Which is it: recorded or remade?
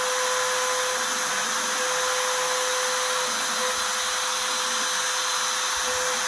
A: recorded